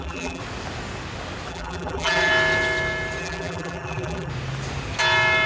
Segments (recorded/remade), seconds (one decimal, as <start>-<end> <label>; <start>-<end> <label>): 0.0-0.4 remade; 0.4-1.5 recorded; 1.5-2.3 remade; 2.3-3.2 recorded; 3.2-4.3 remade; 4.3-5.5 recorded